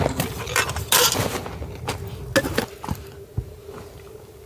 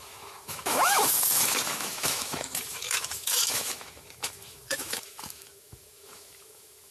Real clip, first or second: first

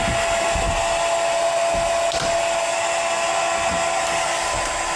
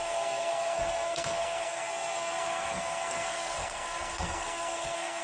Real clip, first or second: first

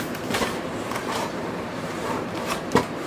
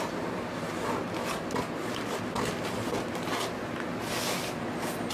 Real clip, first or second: second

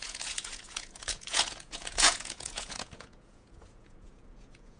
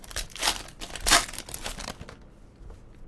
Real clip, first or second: second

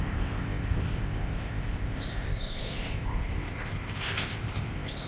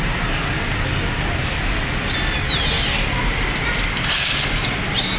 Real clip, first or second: second